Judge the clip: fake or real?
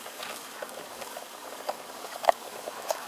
fake